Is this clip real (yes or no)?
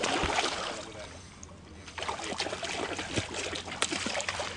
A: yes